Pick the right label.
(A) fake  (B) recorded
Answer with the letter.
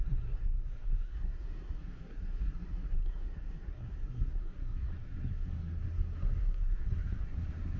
A